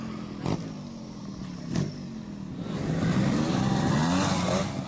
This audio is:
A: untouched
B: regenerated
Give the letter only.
A